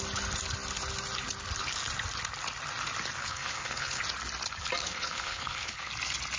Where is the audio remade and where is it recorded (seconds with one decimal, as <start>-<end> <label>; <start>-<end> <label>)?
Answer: 0.0-3.2 recorded; 3.2-4.0 remade; 4.0-4.8 recorded; 4.8-5.9 remade; 5.9-6.4 recorded